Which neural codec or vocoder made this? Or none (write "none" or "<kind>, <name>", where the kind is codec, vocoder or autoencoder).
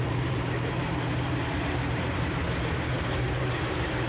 vocoder, BigVGAN v2